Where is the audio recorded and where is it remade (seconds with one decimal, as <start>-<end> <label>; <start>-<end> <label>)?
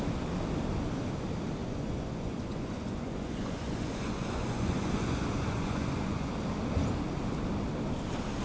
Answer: 0.0-1.6 recorded; 1.6-6.3 remade; 6.3-8.4 recorded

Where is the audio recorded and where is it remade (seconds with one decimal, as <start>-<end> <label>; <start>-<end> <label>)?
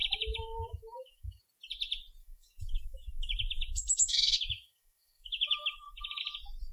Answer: 0.0-1.4 remade; 1.4-2.2 recorded; 2.2-6.2 remade; 6.2-6.7 recorded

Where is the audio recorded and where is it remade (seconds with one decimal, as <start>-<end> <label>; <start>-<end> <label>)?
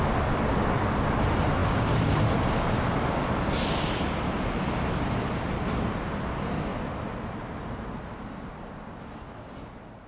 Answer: 0.0-10.1 recorded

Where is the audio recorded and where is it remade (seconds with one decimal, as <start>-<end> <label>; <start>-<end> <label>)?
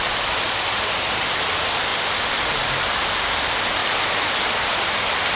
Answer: 0.0-3.8 recorded; 3.8-4.5 remade; 4.5-5.4 recorded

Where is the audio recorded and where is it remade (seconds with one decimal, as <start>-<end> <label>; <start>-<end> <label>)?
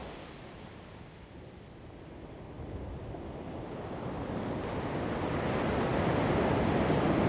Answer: 0.0-7.3 recorded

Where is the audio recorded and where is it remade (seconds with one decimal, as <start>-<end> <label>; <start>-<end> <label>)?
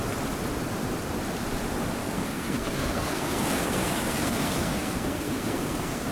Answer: 0.0-2.0 recorded; 2.0-6.1 remade